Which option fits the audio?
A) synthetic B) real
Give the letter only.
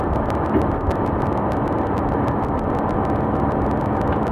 B